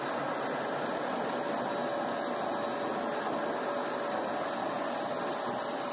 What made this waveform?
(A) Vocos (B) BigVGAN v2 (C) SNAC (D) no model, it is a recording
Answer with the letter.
D